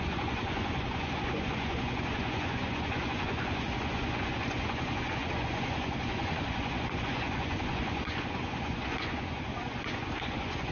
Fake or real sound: fake